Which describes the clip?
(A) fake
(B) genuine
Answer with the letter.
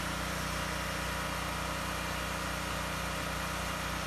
B